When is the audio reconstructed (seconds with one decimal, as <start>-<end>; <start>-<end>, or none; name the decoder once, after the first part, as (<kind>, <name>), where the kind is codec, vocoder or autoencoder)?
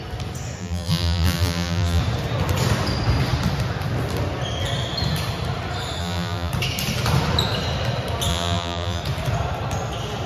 0.6-2.0 (vocoder, BigVGAN v2); 6.0-6.5; 8.3-9.0